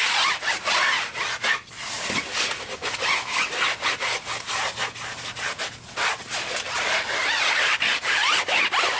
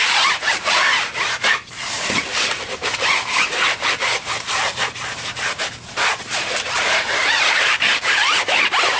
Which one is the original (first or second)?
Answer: first